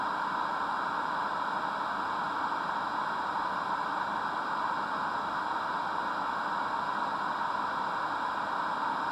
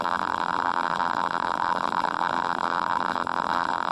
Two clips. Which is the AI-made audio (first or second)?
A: second